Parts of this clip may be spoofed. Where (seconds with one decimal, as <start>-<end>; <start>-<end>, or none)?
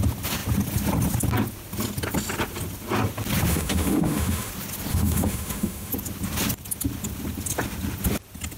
3.5-4.5; 4.9-5.9